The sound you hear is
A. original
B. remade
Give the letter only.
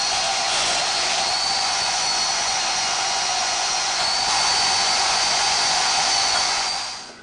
B